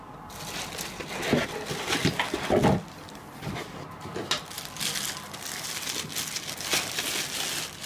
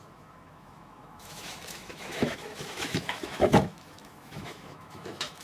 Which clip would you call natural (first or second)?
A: first